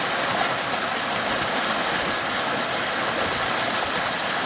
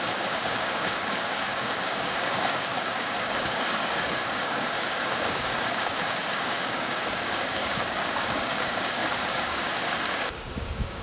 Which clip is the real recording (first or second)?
first